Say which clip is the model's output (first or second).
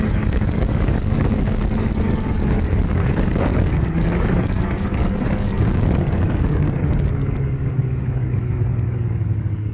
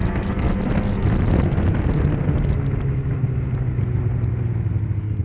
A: first